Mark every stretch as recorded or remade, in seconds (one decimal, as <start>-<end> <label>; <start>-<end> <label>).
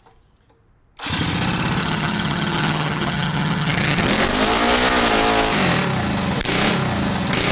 0.0-1.8 recorded; 1.8-4.1 remade; 4.1-7.5 recorded